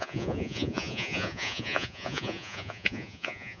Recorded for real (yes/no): no